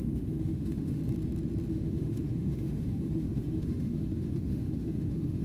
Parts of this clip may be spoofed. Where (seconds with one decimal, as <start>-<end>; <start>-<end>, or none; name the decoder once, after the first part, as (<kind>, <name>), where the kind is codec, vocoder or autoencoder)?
0.0-1.0 (autoencoder, DAC-VAE); 1.7-5.4